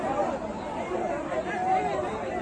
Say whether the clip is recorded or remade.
recorded